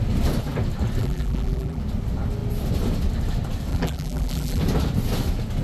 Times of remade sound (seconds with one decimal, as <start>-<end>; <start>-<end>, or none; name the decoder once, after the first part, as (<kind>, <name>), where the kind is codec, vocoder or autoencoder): 1.0-1.8 (vocoder, BigVGAN v2); 3.7-4.6